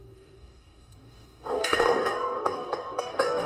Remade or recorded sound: remade